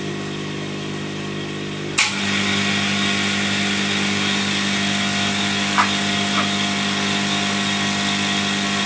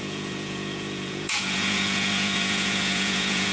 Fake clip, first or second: second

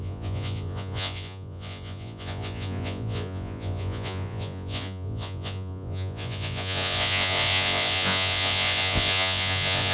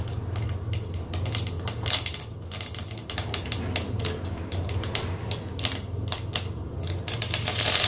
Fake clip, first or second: first